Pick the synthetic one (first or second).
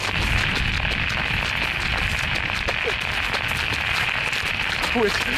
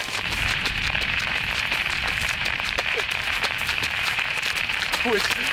second